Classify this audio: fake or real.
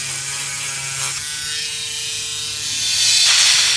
real